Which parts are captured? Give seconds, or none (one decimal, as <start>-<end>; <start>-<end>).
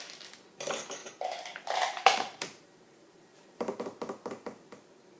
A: 0.0-1.0; 3.8-5.2